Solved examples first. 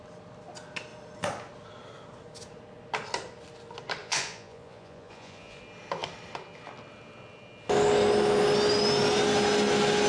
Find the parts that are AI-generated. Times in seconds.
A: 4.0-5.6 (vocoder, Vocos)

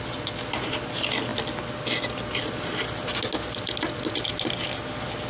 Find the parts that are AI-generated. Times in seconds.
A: none

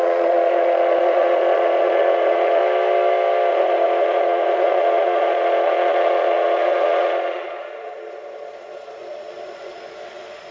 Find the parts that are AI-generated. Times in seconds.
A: 0.0-2.6 (vocoder, Vocos); 3.5-10.5

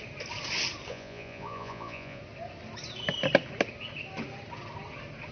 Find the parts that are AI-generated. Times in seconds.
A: 0.9-2.2 (vocoder, Vocos)

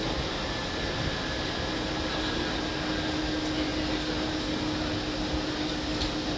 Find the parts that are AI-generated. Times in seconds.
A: none

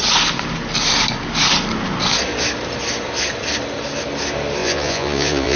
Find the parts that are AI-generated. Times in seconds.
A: 4.6-5.6 (vocoder, Vocos)

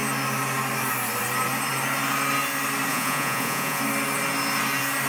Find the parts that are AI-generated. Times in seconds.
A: 2.9-3.8 (vocoder, Vocos)

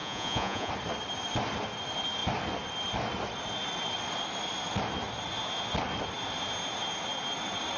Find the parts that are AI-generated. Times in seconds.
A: 0.0-0.7 (vocoder, Vocos)